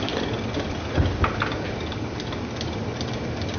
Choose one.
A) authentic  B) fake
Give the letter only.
A